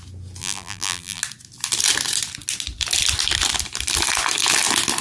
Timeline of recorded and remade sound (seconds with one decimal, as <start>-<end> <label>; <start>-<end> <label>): 0.0-0.4 recorded; 0.4-1.2 remade; 1.2-5.0 recorded